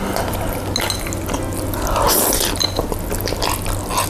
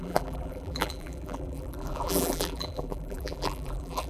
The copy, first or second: second